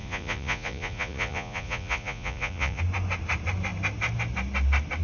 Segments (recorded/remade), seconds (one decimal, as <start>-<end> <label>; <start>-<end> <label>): 0.0-2.8 remade; 2.8-5.0 recorded